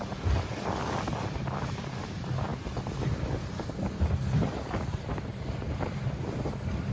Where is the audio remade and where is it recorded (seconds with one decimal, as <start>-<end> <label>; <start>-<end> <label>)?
0.0-6.9 recorded